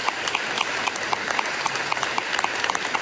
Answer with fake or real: fake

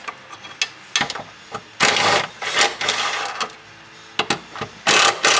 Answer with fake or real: real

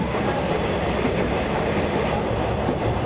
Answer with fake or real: fake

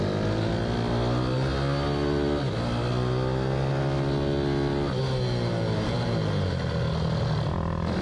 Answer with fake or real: real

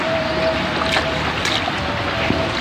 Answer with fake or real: real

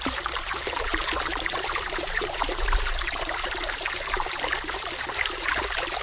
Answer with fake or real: fake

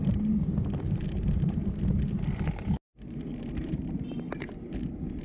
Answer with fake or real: real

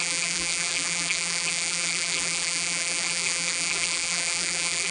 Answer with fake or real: fake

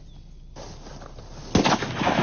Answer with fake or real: real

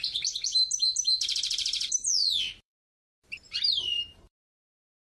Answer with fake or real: fake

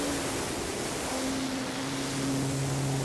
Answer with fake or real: real